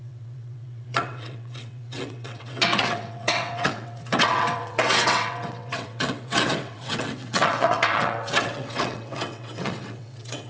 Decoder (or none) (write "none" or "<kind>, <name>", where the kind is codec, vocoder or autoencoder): vocoder, WaveNeXt